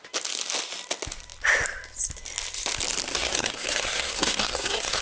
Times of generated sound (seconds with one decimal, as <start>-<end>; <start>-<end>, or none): 3.1-5.0